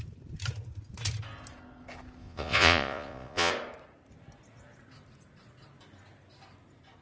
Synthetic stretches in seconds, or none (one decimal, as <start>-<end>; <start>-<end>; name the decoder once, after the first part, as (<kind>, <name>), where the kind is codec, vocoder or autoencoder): 2.2-3.5 (vocoder, Vocos)